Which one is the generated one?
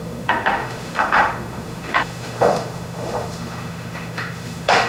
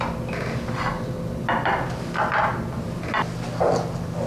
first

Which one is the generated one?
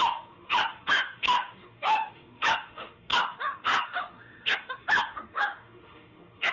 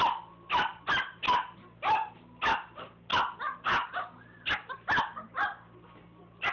first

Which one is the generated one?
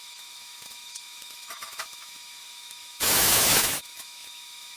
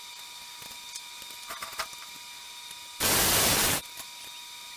first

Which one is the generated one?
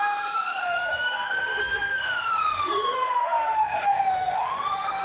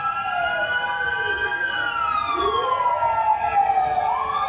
first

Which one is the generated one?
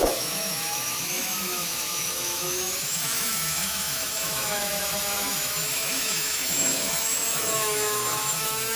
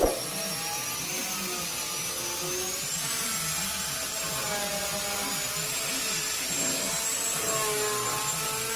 first